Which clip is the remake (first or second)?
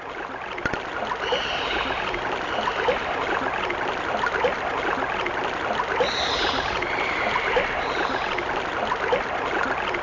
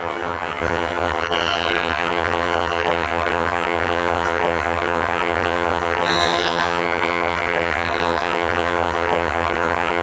second